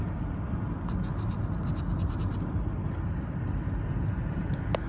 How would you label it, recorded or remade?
recorded